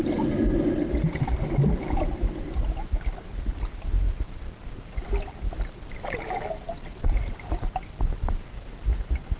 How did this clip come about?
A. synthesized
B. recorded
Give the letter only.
B